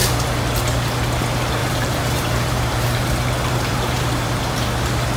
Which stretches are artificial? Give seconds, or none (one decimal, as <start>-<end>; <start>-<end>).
1.6-4.4